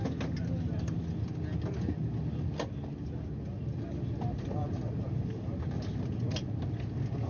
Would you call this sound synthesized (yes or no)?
no